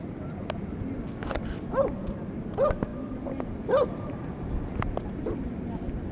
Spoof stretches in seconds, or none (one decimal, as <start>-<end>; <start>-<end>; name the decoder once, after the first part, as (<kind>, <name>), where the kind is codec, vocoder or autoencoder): none